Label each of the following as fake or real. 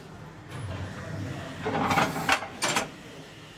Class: real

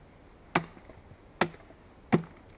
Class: real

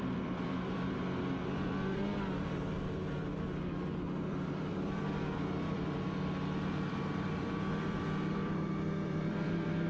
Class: fake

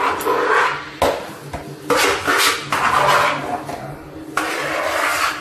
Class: real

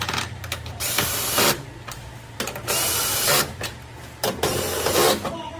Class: fake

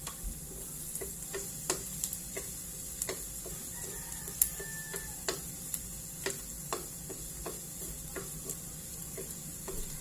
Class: real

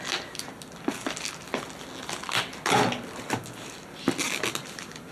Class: real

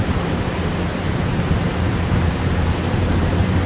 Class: fake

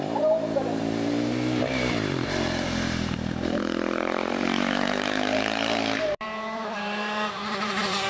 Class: fake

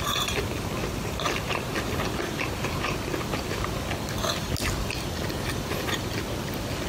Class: real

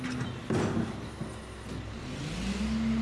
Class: real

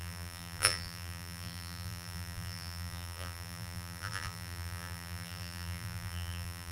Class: fake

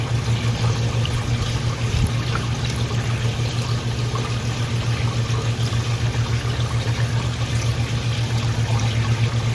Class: real